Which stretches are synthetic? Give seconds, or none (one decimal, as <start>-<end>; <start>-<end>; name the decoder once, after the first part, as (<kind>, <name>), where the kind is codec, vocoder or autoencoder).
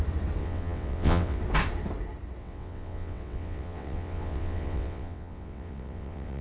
0.4-1.4 (vocoder, WaveNeXt); 2.4-6.4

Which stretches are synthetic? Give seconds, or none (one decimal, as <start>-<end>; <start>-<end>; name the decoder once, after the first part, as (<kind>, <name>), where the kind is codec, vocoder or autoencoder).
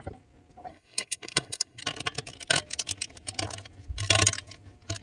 0.7-1.8 (codec, SNAC)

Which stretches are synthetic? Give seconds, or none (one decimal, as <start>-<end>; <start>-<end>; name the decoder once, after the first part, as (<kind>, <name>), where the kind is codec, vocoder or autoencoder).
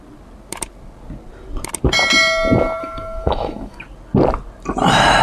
2.8-3.8 (autoencoder, DAC-VAE)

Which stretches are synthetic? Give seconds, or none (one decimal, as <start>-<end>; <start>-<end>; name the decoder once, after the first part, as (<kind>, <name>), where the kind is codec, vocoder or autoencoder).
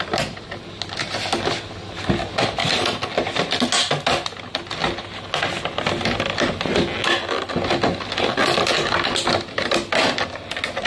none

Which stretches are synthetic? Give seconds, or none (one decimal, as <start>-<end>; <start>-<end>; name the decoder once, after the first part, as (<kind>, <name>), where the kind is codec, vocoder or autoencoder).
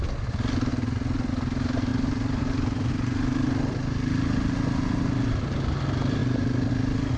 0.7-1.3 (vocoder, BigVGAN v2); 1.9-2.9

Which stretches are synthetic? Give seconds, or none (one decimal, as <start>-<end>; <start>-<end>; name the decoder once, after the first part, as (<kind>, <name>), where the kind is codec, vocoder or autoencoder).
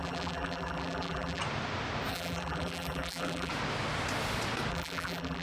0.0-1.4 (vocoder, BigVGAN v2); 2.1-3.5; 4.7-5.4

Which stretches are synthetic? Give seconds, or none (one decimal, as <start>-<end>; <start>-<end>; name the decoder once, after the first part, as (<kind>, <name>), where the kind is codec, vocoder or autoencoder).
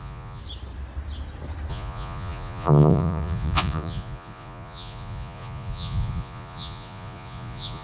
0.0-0.4 (vocoder, Vocos); 1.7-7.8